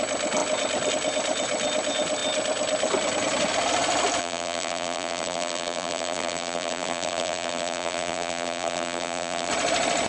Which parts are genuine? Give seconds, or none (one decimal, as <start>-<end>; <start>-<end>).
0.0-4.2; 9.5-10.1